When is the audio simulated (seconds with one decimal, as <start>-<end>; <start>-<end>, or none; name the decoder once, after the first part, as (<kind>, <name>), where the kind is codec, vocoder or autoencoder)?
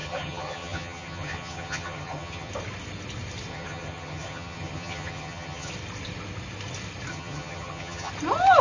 0.0-2.5 (vocoder, HiFi-GAN); 3.5-5.7; 7.1-8.1